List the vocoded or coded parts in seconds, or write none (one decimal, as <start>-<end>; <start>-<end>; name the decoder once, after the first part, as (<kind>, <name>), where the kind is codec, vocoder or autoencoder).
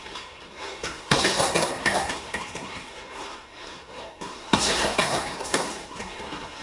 0.0-6.6 (codec, SNAC)